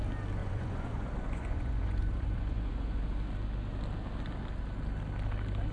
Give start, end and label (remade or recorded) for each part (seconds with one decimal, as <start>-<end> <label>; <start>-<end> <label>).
0.0-0.4 recorded; 0.4-3.1 remade; 3.1-5.7 recorded